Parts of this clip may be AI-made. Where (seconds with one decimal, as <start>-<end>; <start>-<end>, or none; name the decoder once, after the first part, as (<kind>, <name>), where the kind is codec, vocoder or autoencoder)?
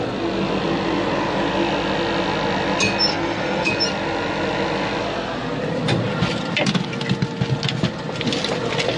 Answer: 3.1-3.7 (codec, SNAC)